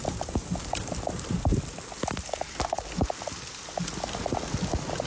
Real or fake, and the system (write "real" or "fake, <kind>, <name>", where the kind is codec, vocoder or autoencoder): real